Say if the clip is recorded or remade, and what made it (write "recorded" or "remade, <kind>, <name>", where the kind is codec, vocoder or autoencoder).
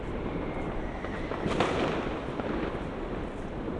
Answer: recorded